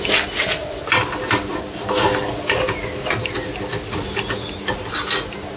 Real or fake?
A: real